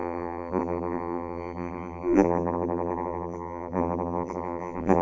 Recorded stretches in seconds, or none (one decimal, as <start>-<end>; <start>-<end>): none